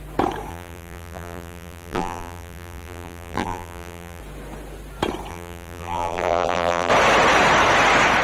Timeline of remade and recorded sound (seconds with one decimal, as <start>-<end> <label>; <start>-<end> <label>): 0.0-0.5 recorded; 0.5-4.2 remade; 4.2-5.3 recorded; 5.3-6.9 remade; 6.9-8.2 recorded